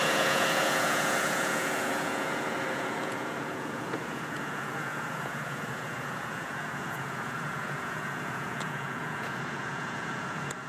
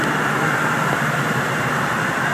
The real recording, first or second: second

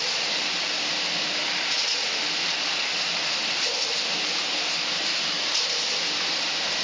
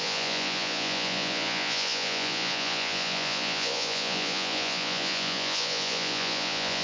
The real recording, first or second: first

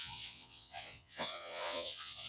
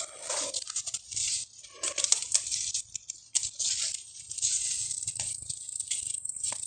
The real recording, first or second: second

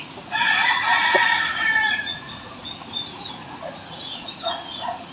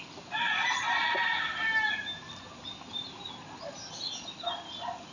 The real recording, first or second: second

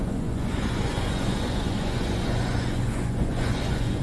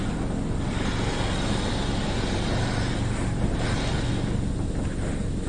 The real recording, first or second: second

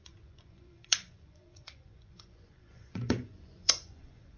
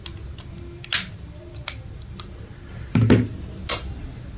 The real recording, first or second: second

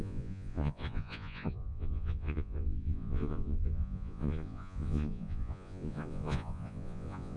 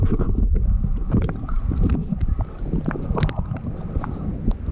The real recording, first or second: second